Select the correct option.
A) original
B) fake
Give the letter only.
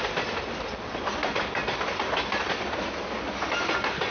A